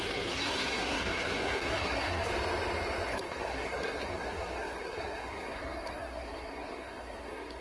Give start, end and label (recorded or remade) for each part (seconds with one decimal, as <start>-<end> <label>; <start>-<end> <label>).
0.0-2.3 remade; 2.3-3.1 recorded; 3.1-7.6 remade